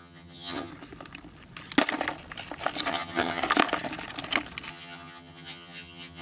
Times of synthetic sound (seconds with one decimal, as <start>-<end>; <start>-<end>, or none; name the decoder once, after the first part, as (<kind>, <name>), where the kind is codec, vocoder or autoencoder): 0.0-0.7 (vocoder, HiFi-GAN); 2.9-3.4; 4.7-6.2